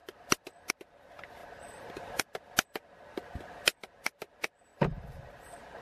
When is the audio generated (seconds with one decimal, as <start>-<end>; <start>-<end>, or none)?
0.0-0.7; 1.4-1.9; 4.7-5.2